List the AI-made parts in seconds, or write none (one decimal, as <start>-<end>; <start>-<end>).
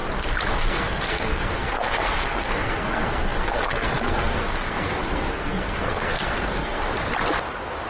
0.5-6.9